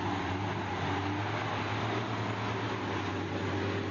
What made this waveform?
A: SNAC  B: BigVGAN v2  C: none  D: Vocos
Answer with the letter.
C